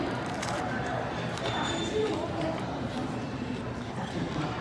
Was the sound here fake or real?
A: fake